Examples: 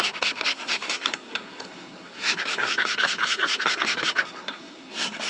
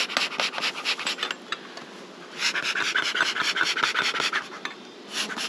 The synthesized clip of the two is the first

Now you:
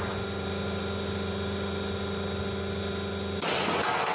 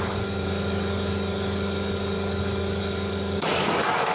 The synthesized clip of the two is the second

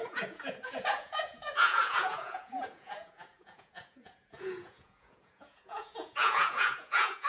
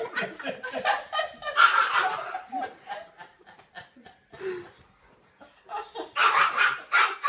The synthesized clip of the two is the first